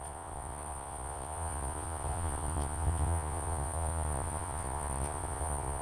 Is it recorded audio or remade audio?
remade